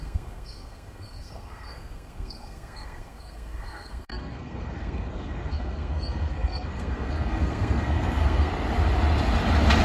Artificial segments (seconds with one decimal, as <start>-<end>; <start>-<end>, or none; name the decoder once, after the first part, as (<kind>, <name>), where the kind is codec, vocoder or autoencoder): 0.0-8.5 (codec, SNAC)

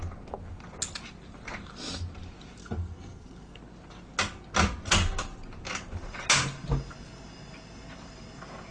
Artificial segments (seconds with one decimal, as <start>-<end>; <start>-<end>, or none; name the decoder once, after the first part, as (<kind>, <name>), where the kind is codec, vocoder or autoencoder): 2.6-3.6 (codec, SNAC)